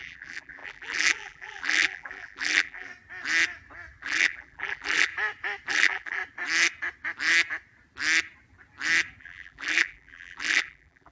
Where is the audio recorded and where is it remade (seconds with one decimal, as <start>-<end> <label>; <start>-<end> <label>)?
0.0-2.9 remade; 2.9-4.0 recorded; 4.0-5.1 remade; 5.1-5.7 recorded; 5.7-6.2 remade; 6.2-9.2 recorded; 9.2-11.1 remade

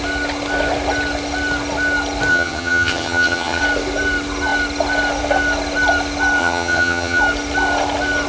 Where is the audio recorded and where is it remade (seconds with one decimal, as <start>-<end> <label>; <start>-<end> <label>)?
0.0-2.3 recorded; 2.3-3.6 remade; 3.6-6.4 recorded; 6.4-7.2 remade; 7.2-8.3 recorded

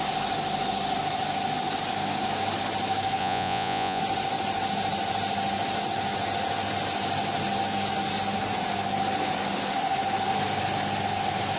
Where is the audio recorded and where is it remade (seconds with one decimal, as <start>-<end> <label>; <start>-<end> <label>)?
0.0-3.2 recorded; 3.2-4.0 remade; 4.0-11.6 recorded

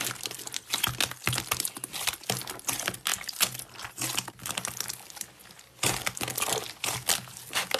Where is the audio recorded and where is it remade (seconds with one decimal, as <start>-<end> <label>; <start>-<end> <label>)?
0.0-7.8 recorded

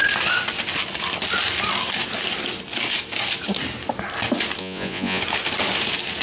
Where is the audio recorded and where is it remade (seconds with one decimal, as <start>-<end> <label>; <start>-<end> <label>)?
0.0-4.6 recorded; 4.6-5.2 remade; 5.2-6.2 recorded

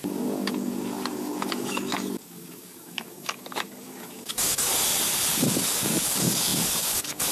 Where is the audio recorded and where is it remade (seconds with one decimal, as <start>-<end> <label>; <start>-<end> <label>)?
0.0-4.7 remade; 4.7-5.3 recorded; 5.3-7.3 remade

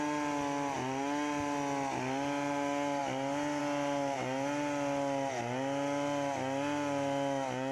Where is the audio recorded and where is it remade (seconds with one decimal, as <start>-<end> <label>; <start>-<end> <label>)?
0.0-7.7 recorded

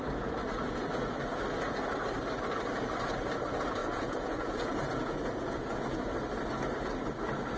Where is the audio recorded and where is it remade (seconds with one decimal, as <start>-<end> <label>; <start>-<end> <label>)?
0.0-3.8 recorded; 3.8-6.1 remade; 6.1-7.6 recorded